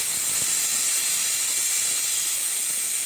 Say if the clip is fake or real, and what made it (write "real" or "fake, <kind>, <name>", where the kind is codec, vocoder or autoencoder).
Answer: real